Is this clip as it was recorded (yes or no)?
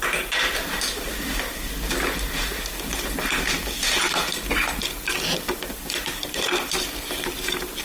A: no